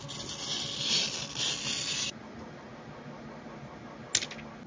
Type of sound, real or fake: real